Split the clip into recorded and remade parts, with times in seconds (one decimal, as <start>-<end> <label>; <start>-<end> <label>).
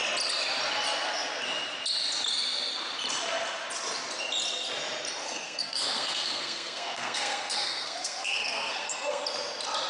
0.0-5.2 recorded; 5.2-9.2 remade; 9.2-9.9 recorded